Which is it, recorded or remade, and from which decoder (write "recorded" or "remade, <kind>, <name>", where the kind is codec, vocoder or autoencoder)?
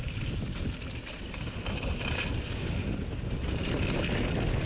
recorded